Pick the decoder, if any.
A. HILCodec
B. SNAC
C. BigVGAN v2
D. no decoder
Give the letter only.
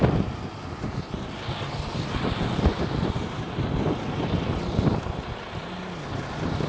D